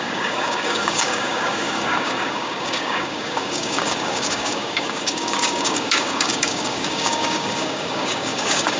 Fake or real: fake